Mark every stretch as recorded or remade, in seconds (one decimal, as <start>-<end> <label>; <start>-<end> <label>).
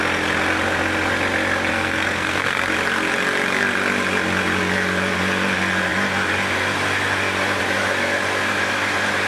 0.0-1.7 recorded; 1.7-2.7 remade; 2.7-9.3 recorded